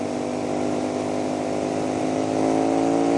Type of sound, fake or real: real